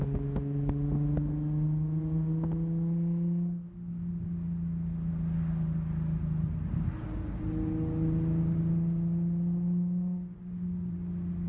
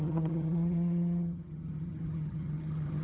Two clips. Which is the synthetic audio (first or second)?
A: second